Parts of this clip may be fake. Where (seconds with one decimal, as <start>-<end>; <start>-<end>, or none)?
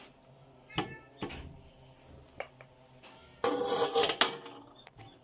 none